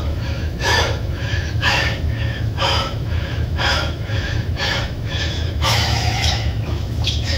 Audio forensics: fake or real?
fake